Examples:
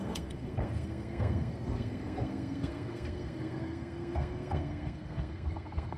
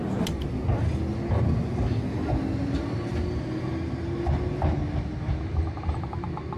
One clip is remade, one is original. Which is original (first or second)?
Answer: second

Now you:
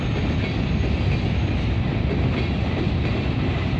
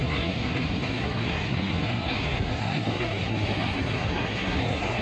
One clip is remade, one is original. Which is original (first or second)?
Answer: first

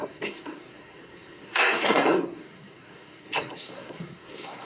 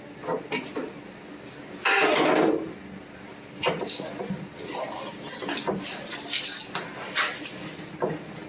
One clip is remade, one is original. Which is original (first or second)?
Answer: second